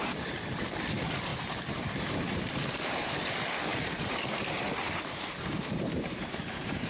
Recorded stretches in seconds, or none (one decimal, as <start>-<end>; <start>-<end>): 0.0-1.3; 3.1-3.7